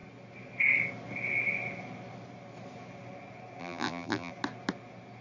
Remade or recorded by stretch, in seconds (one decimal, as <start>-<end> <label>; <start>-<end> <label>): 0.0-3.6 recorded; 3.6-4.3 remade; 4.3-5.2 recorded